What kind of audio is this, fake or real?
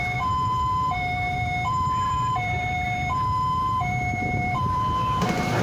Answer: fake